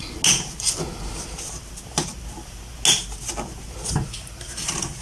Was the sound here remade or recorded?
recorded